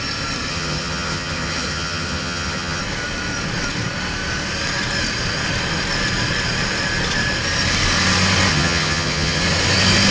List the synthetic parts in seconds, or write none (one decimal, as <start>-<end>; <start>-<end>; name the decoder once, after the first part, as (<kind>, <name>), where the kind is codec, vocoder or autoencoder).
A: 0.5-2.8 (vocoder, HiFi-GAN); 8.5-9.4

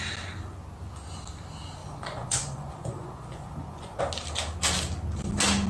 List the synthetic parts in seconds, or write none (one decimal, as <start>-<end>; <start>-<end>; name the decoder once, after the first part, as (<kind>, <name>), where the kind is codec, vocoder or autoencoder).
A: 1.8-4.0 (vocoder, Vocos)

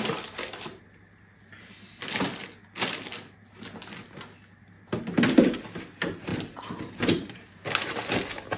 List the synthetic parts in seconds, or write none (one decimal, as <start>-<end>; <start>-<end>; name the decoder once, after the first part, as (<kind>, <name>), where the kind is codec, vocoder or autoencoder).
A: 6.3-7.6 (vocoder, BigVGAN v2)

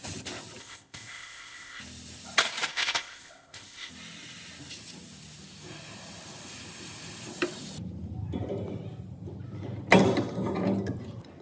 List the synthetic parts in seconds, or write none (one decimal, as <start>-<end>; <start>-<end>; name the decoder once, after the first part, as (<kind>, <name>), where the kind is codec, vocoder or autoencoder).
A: 0.6-1.8 (codec, ZipCodec); 2.7-3.9